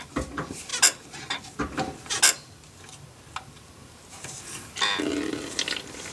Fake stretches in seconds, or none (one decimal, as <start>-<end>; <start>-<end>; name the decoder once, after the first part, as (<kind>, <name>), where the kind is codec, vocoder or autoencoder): none